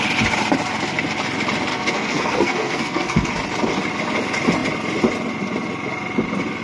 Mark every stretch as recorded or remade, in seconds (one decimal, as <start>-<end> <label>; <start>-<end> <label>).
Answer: 0.0-1.7 recorded; 1.7-3.3 remade; 3.3-6.6 recorded